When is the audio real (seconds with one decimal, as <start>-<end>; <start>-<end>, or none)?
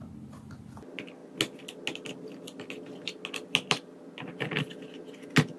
0.0-5.6